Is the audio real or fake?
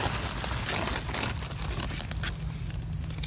real